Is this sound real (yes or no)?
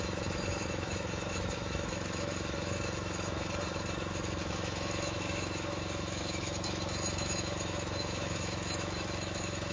no